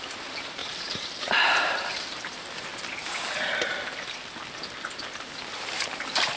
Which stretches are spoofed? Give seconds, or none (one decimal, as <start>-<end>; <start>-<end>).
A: 0.0-2.7; 5.5-6.4